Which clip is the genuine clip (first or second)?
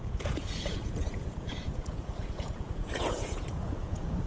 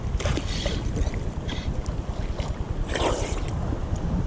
second